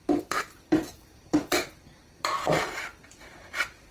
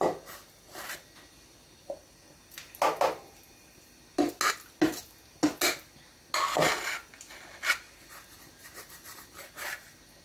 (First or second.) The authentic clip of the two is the second